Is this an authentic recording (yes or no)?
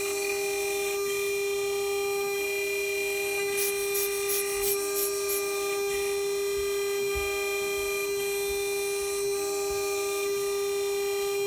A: yes